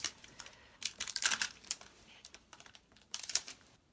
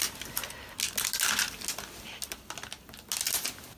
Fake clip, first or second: first